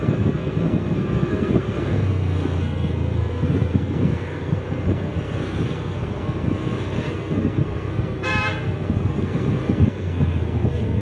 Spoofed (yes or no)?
yes